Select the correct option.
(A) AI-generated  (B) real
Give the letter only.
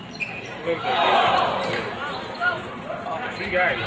A